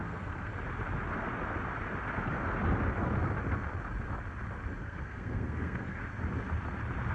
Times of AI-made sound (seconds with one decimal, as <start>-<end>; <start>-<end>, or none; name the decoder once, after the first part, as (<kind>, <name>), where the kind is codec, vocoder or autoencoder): 0.0-0.5 (codec, SNAC); 4.8-6.0